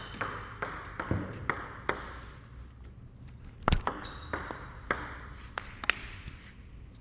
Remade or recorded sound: recorded